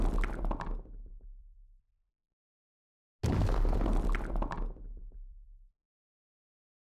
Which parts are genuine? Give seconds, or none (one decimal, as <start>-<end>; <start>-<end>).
0.0-6.9